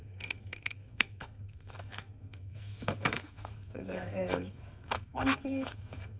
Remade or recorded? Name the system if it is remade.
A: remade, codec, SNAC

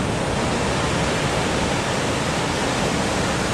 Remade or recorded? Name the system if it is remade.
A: recorded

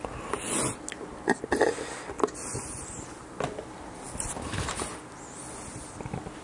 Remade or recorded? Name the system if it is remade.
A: recorded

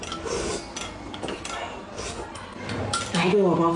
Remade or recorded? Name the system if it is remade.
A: recorded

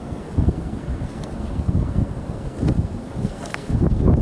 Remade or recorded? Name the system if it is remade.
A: remade, codec, SNAC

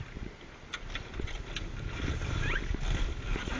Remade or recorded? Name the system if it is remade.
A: recorded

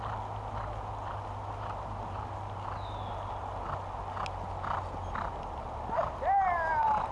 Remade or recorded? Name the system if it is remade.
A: recorded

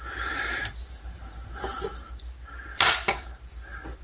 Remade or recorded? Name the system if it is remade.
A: recorded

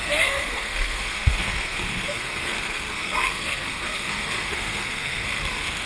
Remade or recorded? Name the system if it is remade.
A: remade, codec, SNAC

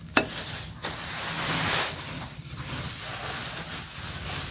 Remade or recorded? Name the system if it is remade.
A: recorded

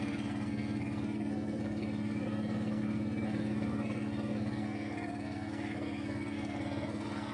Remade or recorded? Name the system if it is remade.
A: remade, codec, SNAC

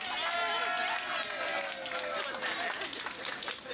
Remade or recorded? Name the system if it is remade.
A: recorded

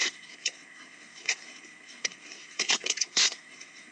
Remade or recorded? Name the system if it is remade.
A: remade, codec, SNAC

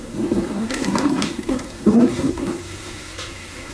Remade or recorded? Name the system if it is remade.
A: remade, codec, SNAC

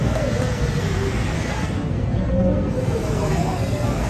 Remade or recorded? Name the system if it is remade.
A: remade, codec, SNAC